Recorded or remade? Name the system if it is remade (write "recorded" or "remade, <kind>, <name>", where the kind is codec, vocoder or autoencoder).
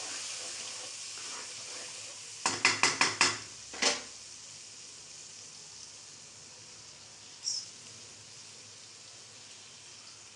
recorded